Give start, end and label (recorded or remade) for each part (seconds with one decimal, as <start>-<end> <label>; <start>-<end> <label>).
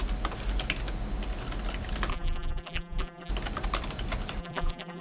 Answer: 0.0-2.1 recorded; 2.1-3.3 remade; 3.3-4.4 recorded; 4.4-5.0 remade